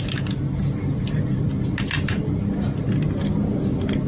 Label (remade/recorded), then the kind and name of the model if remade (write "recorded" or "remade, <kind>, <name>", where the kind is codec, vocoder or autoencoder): recorded